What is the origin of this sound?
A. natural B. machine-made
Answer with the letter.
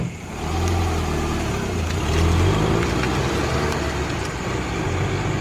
A